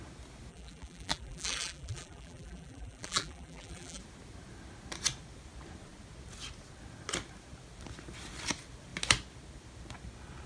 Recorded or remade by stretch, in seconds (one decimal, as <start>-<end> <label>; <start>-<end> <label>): 0.0-0.5 recorded; 0.5-4.0 remade; 4.0-10.5 recorded